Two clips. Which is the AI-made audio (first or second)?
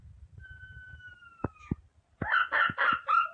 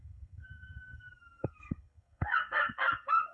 second